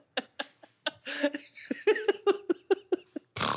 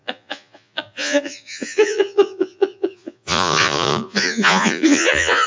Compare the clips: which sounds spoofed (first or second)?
second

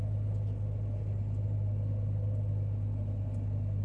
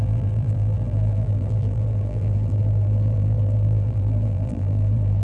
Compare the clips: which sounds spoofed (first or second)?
second